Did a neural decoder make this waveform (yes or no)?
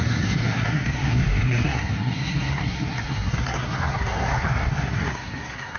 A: yes